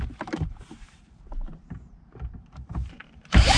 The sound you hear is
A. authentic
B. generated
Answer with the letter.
B